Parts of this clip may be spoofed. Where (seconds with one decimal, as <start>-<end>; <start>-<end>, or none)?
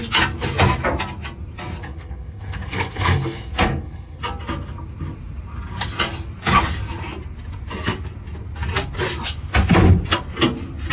1.8-4.2